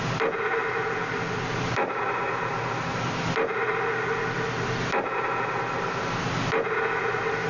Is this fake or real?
real